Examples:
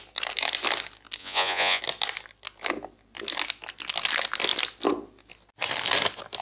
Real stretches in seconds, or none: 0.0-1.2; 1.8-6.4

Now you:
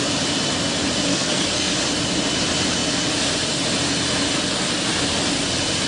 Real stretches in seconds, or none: 0.0-1.1; 1.7-5.9

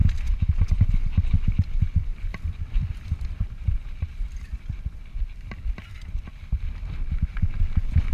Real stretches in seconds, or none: 0.0-2.1; 5.6-8.1

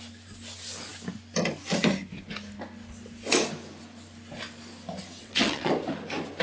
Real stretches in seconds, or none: 0.0-5.2; 5.7-6.4

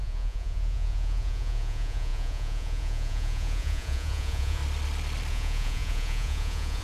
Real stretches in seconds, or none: 4.6-5.3

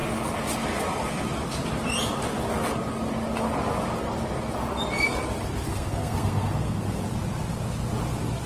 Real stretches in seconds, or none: 0.0-5.7; 7.0-8.5

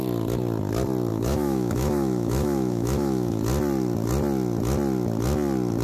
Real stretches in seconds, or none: 0.0-1.1; 3.4-5.8